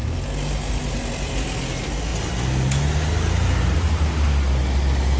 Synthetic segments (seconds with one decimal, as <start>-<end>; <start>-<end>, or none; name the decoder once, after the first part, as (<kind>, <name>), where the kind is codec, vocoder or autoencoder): none